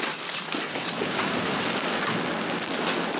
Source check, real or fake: real